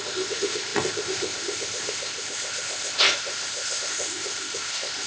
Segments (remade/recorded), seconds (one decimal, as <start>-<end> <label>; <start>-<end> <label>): 0.0-5.1 remade